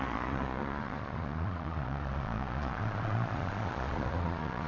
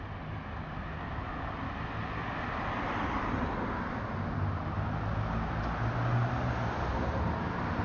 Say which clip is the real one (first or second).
second